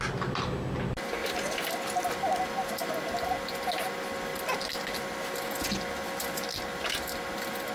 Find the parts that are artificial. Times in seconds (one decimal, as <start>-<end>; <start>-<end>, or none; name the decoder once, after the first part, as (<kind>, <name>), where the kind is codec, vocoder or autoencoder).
none